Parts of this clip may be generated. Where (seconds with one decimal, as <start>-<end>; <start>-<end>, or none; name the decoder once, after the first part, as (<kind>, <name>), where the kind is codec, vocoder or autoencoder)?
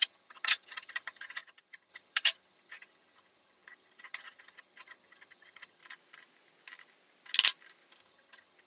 0.0-5.8 (vocoder, HiFi-GAN); 8.0-8.7